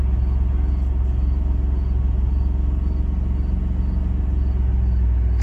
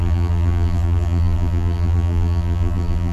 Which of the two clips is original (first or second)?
first